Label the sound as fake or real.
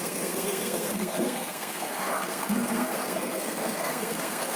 fake